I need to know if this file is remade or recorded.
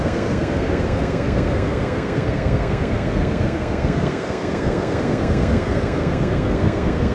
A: remade